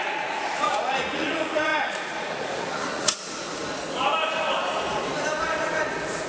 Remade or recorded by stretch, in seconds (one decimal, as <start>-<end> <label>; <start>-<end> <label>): 0.0-3.6 remade; 3.6-6.3 recorded